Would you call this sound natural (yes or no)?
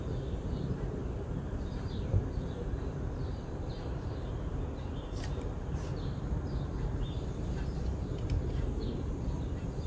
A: no